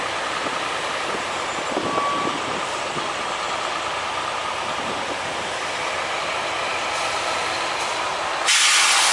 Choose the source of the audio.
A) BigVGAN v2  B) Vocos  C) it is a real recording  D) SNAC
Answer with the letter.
C